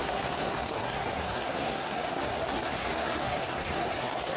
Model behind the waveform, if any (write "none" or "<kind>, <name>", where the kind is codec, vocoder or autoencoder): codec, SNAC